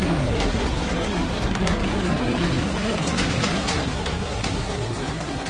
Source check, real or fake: fake